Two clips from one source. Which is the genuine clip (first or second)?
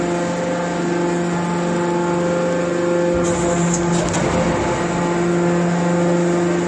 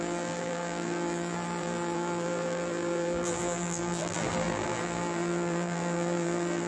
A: first